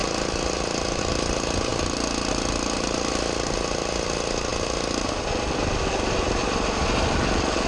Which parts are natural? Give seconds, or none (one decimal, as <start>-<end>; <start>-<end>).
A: 1.0-7.7